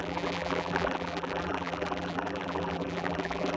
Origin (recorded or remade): remade